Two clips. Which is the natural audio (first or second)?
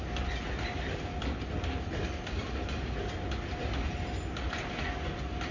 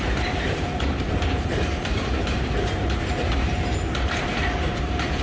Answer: first